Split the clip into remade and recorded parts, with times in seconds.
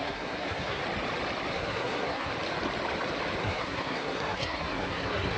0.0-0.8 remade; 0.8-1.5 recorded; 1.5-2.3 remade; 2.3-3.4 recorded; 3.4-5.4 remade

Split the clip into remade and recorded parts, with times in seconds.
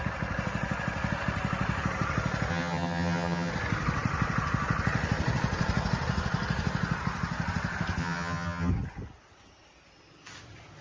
0.0-2.5 recorded; 2.5-3.5 remade; 3.5-8.0 recorded; 8.0-8.7 remade; 8.7-10.8 recorded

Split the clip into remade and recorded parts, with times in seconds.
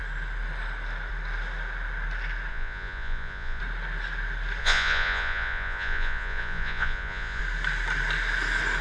0.0-2.5 recorded; 2.5-3.6 remade; 3.6-4.6 recorded; 4.6-7.4 remade; 7.4-8.8 recorded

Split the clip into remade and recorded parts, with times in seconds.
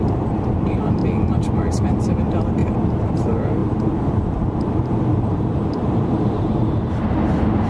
0.0-1.0 remade; 1.0-1.7 recorded; 1.7-2.6 remade; 2.6-3.1 recorded; 3.1-7.7 remade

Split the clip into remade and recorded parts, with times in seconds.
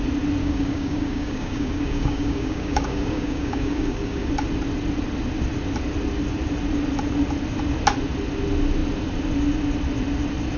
0.0-0.4 recorded; 0.4-4.3 remade; 4.3-10.6 recorded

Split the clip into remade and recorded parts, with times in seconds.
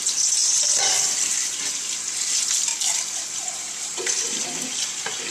0.0-0.4 recorded; 0.4-2.2 remade; 2.2-2.7 recorded; 2.7-4.4 remade; 4.4-5.3 recorded